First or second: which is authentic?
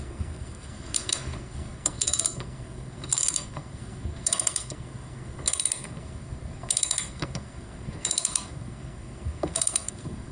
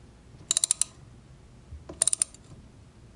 second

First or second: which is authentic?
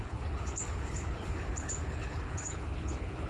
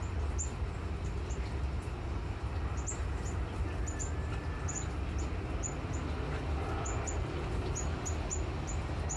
second